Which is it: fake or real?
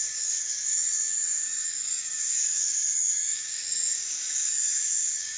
fake